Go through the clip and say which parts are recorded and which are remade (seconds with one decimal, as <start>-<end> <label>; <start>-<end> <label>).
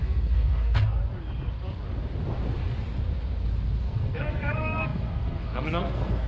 0.0-1.0 remade; 1.0-3.8 recorded; 3.8-6.3 remade